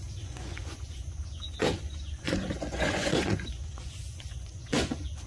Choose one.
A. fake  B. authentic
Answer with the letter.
A